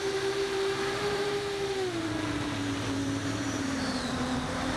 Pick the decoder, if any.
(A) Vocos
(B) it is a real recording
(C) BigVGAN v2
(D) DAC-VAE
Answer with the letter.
C